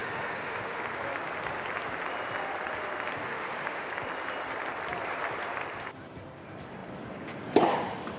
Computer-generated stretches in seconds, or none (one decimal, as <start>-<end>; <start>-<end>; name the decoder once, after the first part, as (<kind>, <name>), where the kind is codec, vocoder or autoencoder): 0.0-0.8 (autoencoder, DAC-VAE); 3.2-3.9